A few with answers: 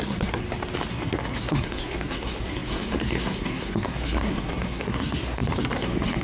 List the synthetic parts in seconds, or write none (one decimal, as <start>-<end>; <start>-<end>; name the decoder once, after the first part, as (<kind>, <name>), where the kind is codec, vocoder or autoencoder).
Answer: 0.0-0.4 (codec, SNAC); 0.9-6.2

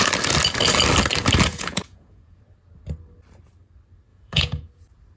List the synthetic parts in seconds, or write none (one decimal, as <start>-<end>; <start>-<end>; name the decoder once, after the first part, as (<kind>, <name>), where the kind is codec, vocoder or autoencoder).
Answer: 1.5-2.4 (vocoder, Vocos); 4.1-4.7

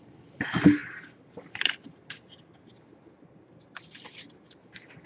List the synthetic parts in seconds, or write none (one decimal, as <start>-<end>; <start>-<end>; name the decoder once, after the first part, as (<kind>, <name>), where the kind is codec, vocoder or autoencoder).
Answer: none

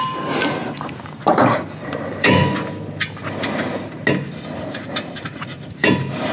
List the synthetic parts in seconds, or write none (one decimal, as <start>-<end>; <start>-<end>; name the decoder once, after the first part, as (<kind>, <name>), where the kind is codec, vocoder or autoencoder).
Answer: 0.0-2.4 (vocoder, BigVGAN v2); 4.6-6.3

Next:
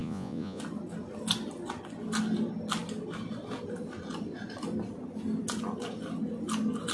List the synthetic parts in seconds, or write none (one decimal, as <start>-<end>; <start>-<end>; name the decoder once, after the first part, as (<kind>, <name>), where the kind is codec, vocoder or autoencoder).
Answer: 0.0-0.6 (vocoder, Vocos)